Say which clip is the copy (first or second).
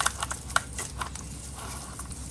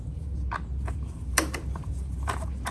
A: second